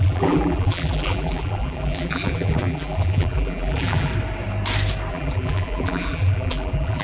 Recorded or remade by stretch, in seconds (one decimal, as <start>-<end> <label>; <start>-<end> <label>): 0.0-4.1 remade; 4.1-5.1 recorded; 5.1-7.0 remade